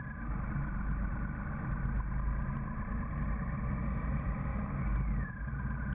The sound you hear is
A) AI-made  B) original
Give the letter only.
B